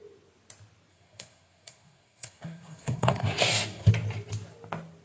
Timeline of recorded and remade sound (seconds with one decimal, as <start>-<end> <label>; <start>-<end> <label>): 0.0-0.9 recorded; 0.9-3.9 remade; 3.9-5.0 recorded